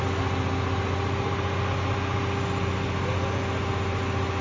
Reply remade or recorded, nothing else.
recorded